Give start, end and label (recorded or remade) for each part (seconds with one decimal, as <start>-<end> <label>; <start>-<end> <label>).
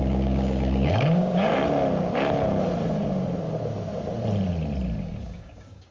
0.0-1.5 remade; 1.5-5.0 recorded; 5.0-5.9 remade